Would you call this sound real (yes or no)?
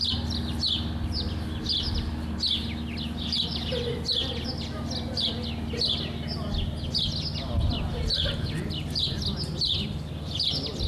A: yes